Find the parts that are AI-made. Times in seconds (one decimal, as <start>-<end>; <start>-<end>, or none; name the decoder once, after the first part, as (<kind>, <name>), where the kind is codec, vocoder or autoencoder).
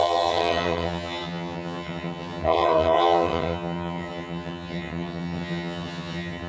0.0-6.5 (vocoder, HiFi-GAN)